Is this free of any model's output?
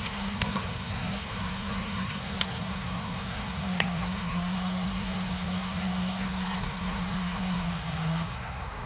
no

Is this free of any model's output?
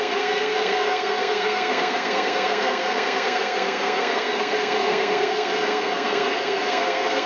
no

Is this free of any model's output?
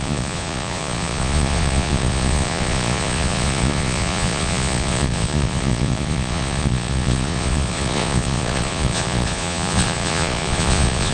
no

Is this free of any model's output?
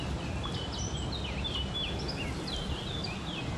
yes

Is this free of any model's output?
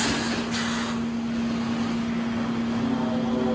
yes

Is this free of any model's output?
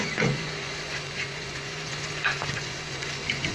no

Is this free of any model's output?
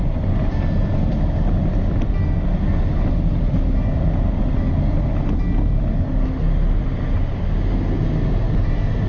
yes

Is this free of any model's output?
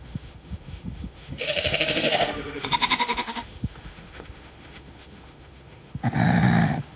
no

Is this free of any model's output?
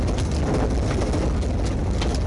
yes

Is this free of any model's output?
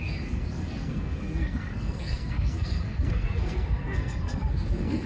no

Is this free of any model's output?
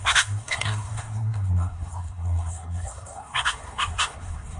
no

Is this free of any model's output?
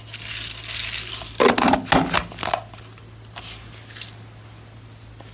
yes